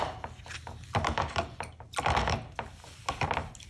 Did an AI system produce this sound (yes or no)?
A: no